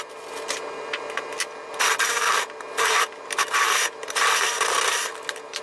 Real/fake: real